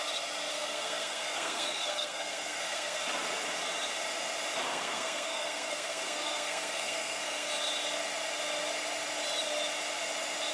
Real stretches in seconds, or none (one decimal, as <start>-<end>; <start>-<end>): 0.0-0.5; 3.0-4.7; 7.5-10.5